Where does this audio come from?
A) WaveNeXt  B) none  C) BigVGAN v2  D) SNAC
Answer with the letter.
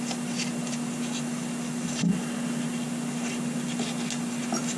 B